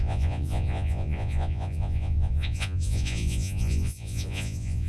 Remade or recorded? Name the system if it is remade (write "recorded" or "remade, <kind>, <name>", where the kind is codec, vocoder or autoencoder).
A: remade, vocoder, Vocos